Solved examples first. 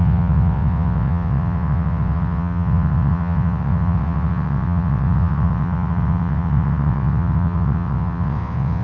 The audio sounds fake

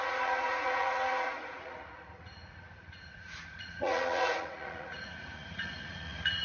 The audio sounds fake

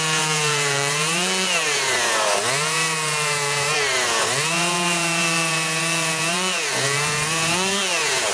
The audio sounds fake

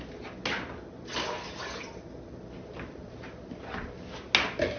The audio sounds real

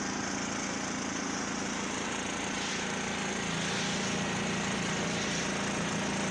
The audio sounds real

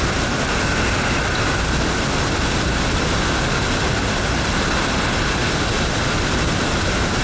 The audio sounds real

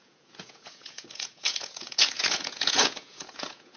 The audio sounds fake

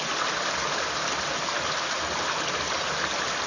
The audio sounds real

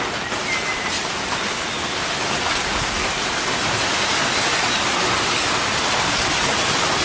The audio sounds real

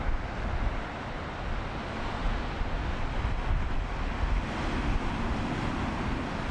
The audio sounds real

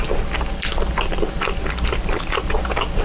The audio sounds real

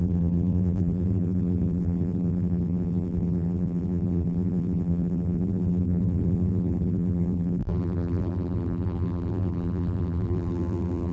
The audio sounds fake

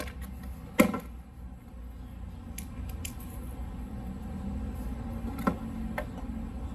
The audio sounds real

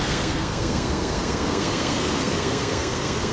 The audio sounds fake